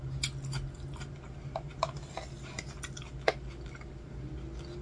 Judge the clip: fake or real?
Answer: real